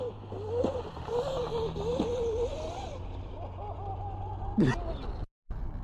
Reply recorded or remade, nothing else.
recorded